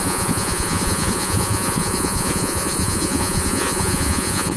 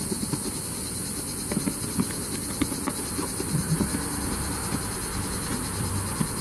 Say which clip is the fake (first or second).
first